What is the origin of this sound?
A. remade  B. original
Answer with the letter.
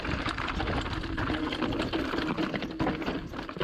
B